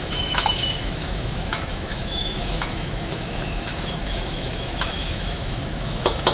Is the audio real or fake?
fake